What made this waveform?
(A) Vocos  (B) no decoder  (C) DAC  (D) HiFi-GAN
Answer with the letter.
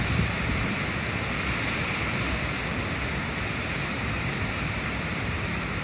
B